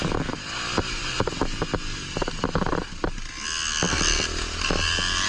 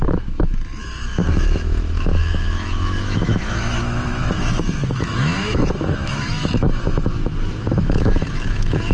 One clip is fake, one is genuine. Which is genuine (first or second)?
first